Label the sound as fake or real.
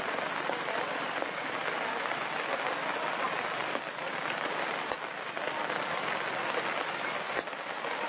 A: real